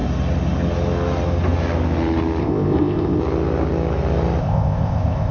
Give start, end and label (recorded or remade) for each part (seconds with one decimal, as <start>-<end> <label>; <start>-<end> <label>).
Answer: 0.0-2.4 recorded; 2.4-3.2 remade; 3.2-4.4 recorded; 4.4-5.3 remade